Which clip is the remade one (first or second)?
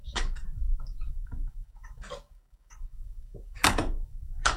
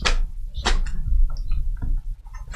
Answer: first